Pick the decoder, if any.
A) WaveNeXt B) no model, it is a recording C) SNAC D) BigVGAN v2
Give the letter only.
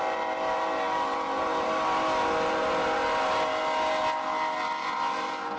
B